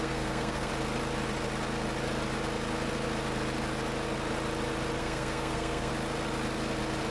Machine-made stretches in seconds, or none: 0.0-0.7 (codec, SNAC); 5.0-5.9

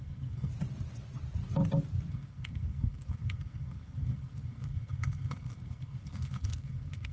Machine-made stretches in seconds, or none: 0.0-0.5 (codec, SNAC); 2.1-7.1

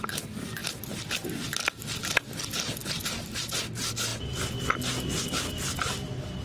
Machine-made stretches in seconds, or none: none

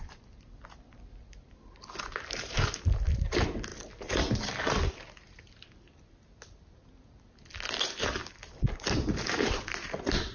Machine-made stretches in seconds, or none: none

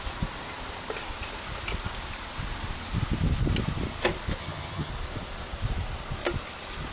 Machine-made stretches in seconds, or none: 4.4-4.9 (vocoder, HiFi-GAN)

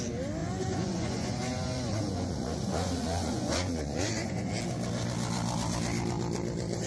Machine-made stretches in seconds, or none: 0.4-4.5 (vocoder, Vocos)

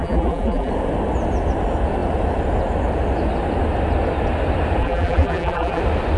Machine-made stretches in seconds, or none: 0.0-0.7 (vocoder, BigVGAN v2); 4.8-5.8

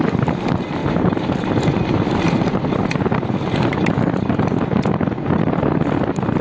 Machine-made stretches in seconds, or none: 0.8-4.6 (vocoder, BigVGAN v2)